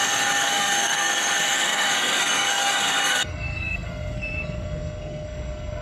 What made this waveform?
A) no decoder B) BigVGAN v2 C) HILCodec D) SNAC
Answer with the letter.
D